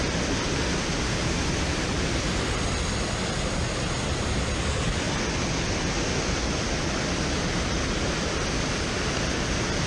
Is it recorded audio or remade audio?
recorded